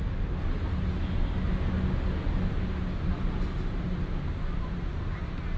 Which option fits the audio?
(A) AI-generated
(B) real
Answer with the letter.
B